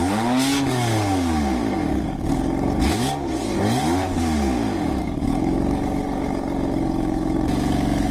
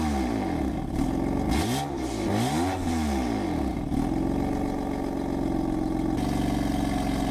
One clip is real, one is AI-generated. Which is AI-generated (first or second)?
first